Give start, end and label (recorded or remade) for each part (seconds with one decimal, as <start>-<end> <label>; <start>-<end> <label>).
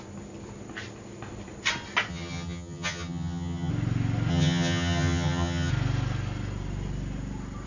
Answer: 0.0-2.1 recorded; 2.1-3.7 remade; 3.7-4.3 recorded; 4.3-5.7 remade; 5.7-7.7 recorded